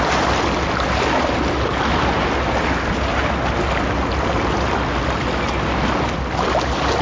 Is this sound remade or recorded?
recorded